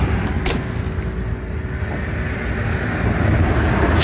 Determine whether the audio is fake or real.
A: real